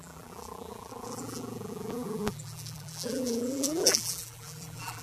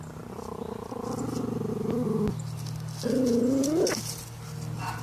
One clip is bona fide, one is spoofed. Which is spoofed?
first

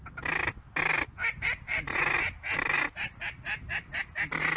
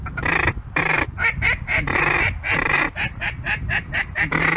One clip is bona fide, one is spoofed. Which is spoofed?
second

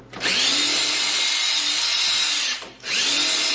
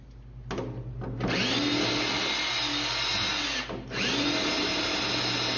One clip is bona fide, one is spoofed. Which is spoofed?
first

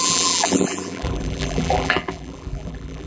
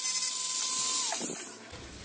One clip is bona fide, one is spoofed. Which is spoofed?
first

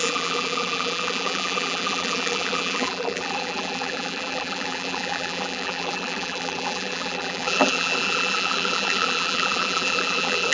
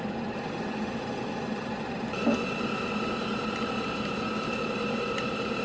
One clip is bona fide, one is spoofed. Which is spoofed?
first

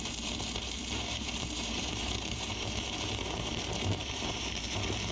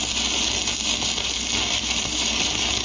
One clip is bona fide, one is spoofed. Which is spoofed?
first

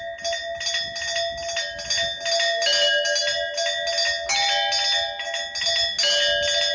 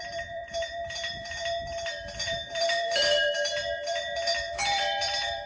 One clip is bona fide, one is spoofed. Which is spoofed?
second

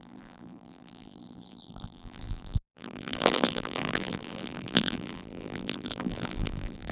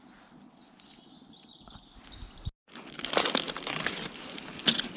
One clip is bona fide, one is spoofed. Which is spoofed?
first